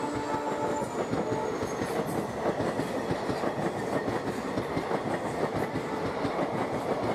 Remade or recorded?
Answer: recorded